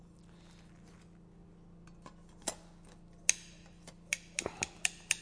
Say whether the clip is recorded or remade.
recorded